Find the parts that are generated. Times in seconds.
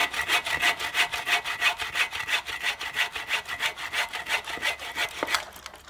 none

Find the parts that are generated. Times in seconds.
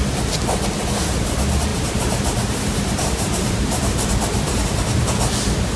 1.7-5.2 (vocoder, BigVGAN v2)